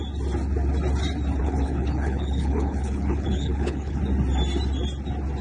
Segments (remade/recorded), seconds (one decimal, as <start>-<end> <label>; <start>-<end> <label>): 0.0-1.4 recorded; 1.4-4.0 remade; 4.0-5.4 recorded